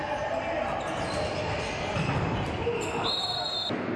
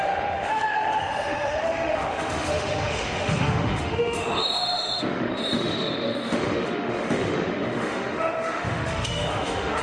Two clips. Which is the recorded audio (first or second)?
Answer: first